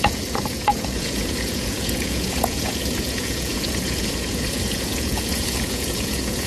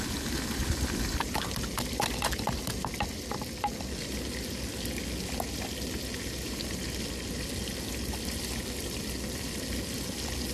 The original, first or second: second